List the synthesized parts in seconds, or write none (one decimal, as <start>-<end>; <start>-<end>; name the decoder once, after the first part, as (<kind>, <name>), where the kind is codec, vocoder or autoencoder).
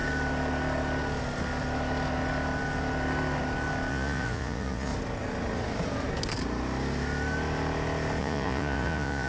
3.9-4.9 (vocoder, Vocos); 8.2-9.3